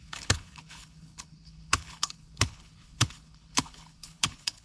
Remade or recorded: remade